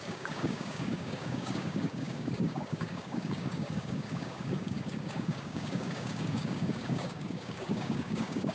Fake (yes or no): yes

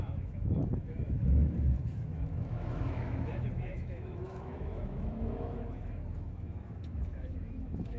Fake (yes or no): yes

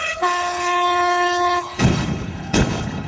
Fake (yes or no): yes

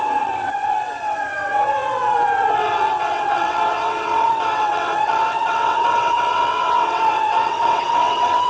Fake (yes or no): yes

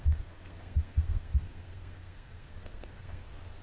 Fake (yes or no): yes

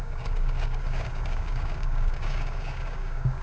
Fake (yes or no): yes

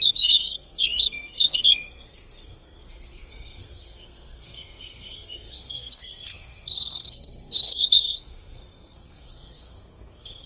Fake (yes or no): yes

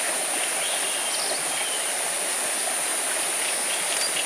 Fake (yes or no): no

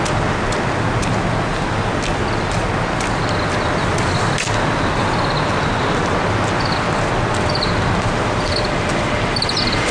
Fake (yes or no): no